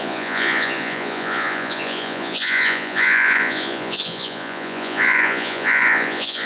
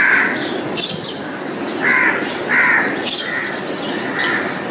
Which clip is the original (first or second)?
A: second